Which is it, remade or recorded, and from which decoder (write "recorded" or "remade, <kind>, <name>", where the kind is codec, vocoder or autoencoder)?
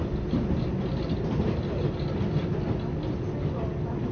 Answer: recorded